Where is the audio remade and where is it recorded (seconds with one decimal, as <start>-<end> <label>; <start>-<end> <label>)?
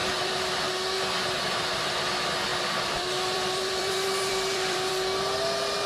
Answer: 0.0-0.7 remade; 0.7-2.5 recorded; 2.5-4.9 remade; 4.9-5.9 recorded